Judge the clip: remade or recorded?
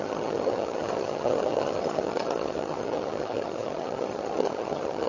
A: remade